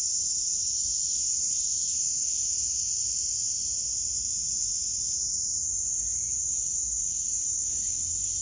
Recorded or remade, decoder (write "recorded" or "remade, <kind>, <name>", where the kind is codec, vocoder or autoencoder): recorded